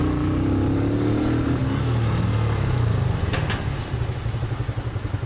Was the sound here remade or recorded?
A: recorded